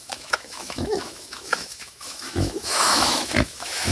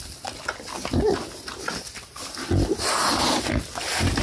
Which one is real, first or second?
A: second